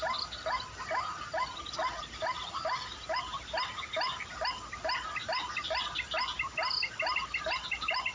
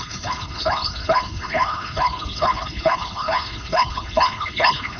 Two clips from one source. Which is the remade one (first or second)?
second